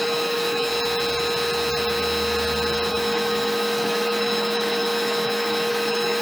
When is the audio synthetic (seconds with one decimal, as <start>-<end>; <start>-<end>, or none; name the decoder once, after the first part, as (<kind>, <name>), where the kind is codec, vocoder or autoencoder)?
0.0-0.7 (autoencoder, DAC-VAE); 2.9-6.2